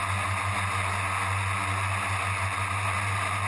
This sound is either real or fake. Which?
real